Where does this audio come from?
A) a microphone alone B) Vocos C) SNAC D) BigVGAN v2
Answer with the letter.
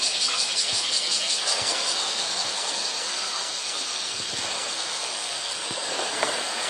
C